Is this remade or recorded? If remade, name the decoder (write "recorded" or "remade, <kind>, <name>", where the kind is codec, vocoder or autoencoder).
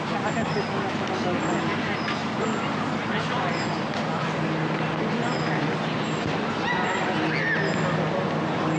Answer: recorded